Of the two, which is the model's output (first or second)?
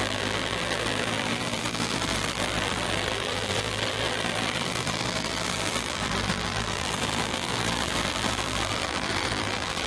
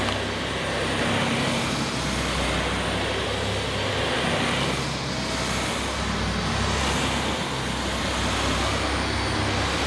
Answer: first